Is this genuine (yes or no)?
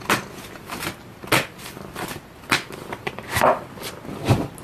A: yes